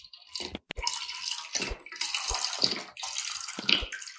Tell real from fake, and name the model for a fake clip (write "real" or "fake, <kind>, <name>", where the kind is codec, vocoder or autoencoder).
real